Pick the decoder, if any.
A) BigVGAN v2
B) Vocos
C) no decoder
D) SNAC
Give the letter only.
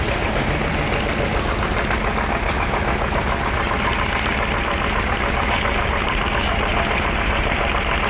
C